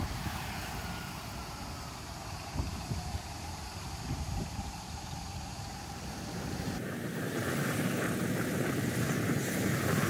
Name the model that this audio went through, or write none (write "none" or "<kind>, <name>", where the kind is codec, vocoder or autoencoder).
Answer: vocoder, BigVGAN v2